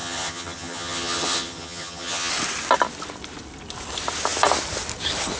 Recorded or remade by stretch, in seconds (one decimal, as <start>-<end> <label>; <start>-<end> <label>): 0.0-2.3 remade; 2.3-5.4 recorded